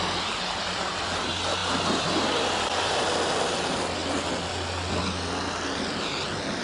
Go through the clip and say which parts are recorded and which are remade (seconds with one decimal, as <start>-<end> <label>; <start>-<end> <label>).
0.0-6.6 recorded